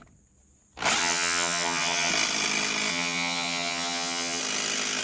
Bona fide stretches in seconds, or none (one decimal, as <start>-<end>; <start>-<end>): 0.0-1.0; 2.1-2.9; 4.4-5.0